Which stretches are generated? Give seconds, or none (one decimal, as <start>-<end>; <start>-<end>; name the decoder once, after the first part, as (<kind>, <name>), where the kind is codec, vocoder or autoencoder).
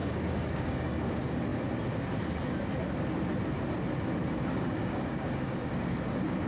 0.0-1.1 (codec, DAC); 4.8-6.5